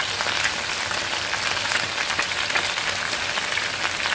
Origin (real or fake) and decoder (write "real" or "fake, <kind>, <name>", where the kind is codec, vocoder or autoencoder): real